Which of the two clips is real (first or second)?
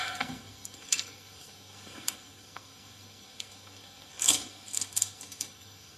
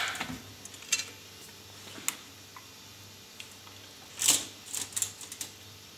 second